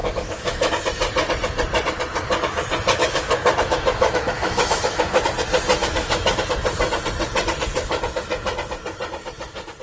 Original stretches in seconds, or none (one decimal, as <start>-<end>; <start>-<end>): 0.7-3.0; 5.2-5.8; 6.4-9.8